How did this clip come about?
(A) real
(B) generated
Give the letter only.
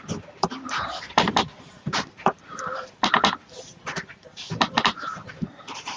B